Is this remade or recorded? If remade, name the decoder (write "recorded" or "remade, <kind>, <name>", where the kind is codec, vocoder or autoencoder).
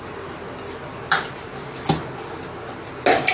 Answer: recorded